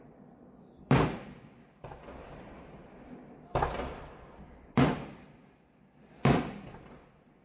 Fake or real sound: real